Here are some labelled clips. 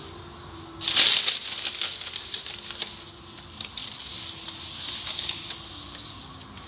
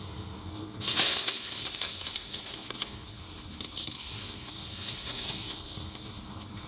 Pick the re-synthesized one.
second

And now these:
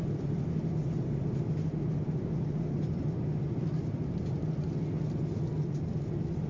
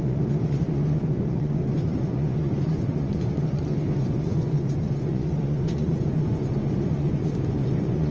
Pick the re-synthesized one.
second